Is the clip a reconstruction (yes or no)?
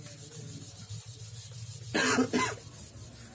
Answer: no